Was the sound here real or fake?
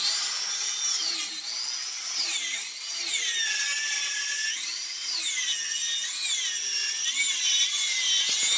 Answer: real